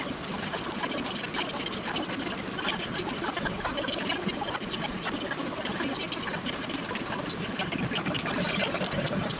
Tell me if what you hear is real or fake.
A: real